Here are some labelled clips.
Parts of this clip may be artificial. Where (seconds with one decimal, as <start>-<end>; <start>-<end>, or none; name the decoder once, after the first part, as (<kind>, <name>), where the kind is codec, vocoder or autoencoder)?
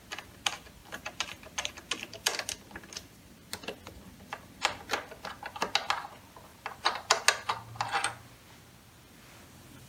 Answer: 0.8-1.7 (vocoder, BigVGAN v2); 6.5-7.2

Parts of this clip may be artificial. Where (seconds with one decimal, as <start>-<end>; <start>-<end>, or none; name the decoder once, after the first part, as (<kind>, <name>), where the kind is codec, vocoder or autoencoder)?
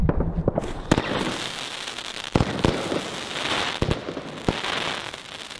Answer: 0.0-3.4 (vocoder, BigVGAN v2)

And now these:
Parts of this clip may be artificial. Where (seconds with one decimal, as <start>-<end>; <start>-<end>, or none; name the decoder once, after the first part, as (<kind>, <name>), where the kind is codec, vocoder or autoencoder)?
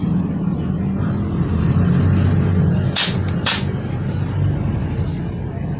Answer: none